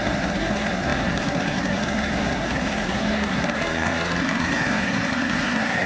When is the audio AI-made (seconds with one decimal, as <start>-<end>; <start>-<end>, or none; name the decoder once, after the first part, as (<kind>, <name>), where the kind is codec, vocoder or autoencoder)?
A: 0.0-5.9 (codec, SNAC)